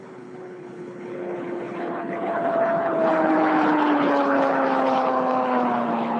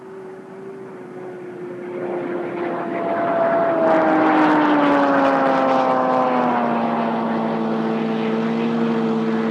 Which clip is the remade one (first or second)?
first